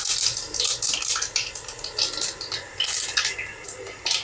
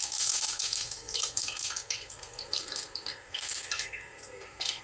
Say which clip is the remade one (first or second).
second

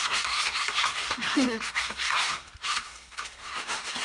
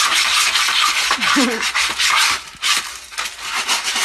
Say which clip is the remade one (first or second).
first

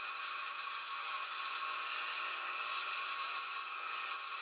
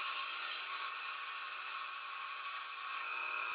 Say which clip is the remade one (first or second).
first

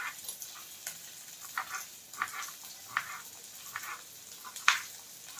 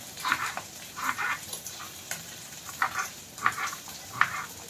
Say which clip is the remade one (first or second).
second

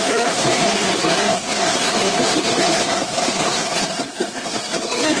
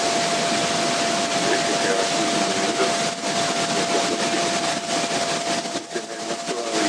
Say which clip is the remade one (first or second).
first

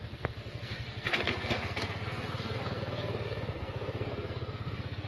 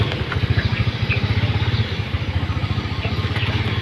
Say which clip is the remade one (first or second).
first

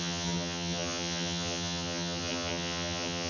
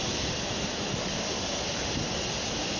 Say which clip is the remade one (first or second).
first